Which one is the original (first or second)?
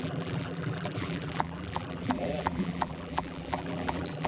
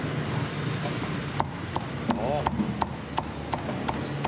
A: second